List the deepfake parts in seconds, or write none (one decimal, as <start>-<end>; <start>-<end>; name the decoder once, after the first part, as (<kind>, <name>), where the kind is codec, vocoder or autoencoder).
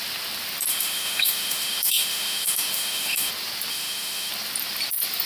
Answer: 0.7-3.3 (autoencoder, DAC-VAE); 3.7-4.3